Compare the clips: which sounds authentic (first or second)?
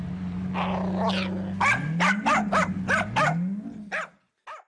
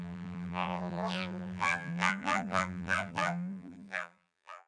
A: first